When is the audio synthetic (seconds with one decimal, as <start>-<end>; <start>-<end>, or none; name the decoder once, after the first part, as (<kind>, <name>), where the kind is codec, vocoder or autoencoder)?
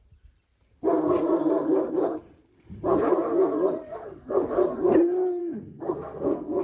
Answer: 3.9-4.5 (codec, SNAC); 5.4-6.6